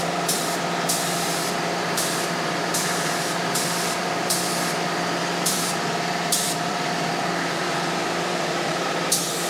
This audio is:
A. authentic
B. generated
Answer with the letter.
B